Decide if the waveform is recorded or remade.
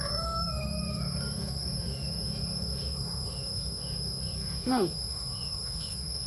remade